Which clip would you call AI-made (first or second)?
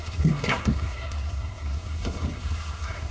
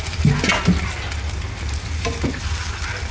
first